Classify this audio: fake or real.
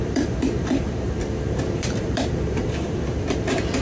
fake